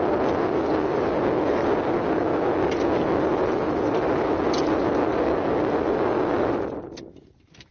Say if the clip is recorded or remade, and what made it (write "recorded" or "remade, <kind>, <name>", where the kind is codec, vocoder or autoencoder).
recorded